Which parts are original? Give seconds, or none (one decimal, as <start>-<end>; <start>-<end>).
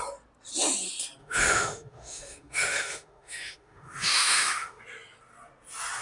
0.0-1.2; 4.8-6.0